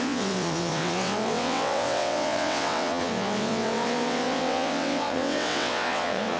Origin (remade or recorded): remade